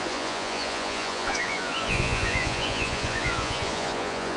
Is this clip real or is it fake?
fake